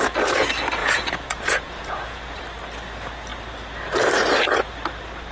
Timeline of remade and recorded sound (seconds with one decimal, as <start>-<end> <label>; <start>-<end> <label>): 0.0-0.8 recorded; 0.8-2.4 remade; 2.4-5.3 recorded